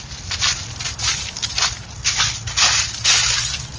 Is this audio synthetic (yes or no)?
no